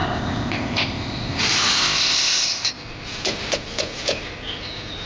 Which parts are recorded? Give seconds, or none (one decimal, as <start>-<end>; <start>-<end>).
1.4-1.8; 2.7-5.1